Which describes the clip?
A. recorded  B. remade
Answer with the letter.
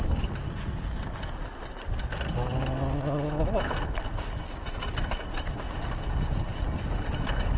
A